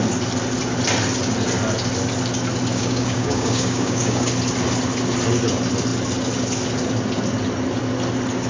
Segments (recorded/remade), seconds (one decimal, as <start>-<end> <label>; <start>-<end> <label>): 0.0-2.7 recorded; 2.7-4.3 remade; 4.3-8.5 recorded